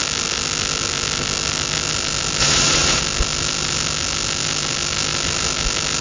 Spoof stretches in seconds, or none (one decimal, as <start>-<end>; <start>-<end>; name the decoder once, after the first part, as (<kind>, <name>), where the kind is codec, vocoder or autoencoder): 2.4-3.0 (vocoder, WaveNeXt)